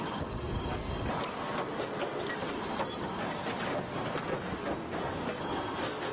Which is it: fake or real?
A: real